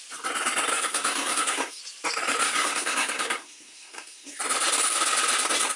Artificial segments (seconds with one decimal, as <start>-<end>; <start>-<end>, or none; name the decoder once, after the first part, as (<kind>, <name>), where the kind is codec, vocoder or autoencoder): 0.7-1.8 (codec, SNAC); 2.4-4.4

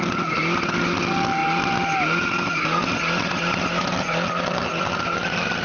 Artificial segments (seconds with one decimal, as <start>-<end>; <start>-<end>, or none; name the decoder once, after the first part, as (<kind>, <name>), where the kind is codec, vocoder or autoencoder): none

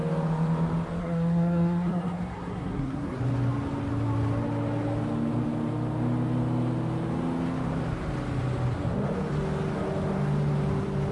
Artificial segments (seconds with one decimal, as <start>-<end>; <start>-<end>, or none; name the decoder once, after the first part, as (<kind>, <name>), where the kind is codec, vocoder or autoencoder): 1.0-3.2 (codec, SNAC)